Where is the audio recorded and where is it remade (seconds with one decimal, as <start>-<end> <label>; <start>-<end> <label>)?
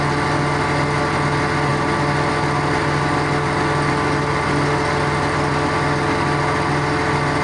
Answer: 0.0-7.4 recorded